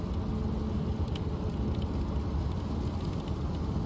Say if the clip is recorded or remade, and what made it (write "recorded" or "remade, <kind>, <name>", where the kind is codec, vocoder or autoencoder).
recorded